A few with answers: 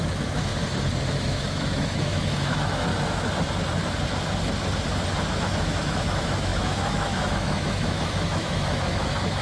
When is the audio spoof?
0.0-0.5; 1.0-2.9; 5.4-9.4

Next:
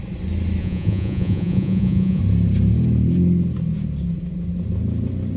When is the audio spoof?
0.6-2.2